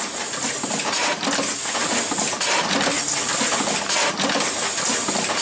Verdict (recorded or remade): recorded